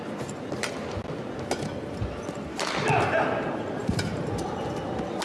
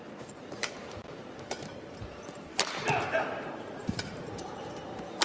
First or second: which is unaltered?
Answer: first